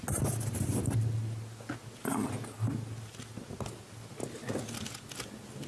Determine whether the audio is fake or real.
real